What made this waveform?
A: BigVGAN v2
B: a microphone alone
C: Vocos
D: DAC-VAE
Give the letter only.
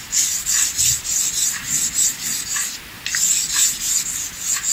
B